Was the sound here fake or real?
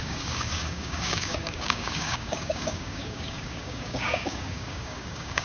fake